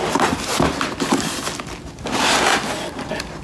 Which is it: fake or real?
real